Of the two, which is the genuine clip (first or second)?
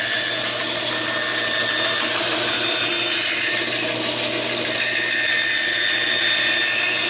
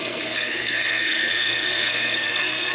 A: first